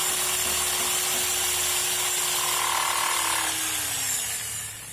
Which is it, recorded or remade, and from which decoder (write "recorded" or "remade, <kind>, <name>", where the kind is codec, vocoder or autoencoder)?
recorded